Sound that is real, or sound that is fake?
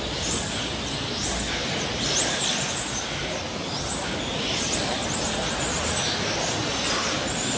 real